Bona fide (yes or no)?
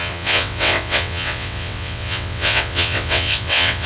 no